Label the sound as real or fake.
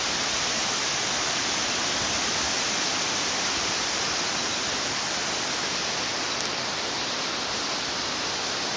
real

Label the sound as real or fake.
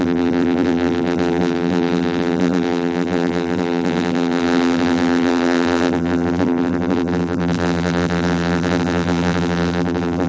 fake